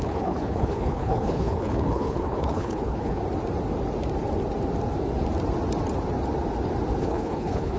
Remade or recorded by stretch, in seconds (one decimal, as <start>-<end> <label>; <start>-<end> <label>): 0.0-3.2 remade; 3.2-7.0 recorded; 7.0-7.8 remade